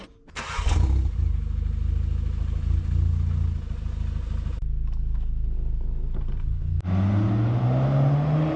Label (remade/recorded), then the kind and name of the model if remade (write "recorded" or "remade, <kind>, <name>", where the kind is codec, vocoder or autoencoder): recorded